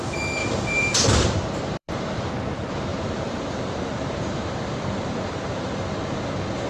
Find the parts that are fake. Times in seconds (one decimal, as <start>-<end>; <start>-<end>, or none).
0.4-2.3; 2.9-6.2